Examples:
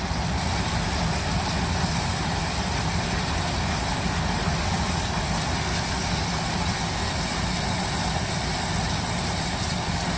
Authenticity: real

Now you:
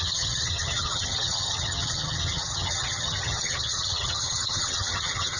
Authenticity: fake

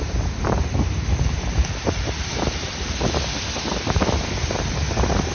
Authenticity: real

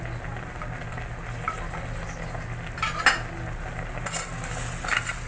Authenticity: real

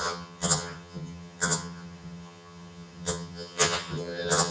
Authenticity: fake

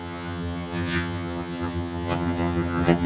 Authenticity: fake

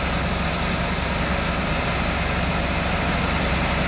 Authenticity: real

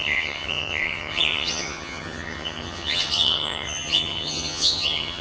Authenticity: fake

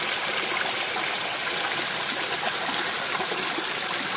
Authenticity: real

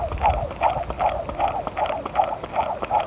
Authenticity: real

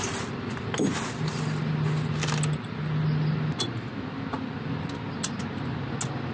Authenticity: real